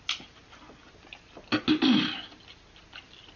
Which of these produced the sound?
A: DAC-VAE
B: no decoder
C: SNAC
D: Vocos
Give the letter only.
B